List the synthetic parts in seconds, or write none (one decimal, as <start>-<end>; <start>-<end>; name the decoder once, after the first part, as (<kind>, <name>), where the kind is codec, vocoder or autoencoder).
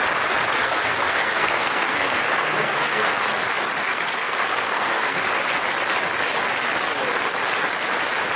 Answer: 0.6-3.2 (codec, SNAC); 3.9-5.3